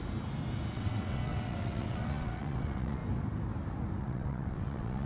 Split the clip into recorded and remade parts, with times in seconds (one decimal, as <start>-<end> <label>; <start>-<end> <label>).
0.0-0.7 recorded; 0.7-3.0 remade; 3.0-4.0 recorded; 4.0-5.1 remade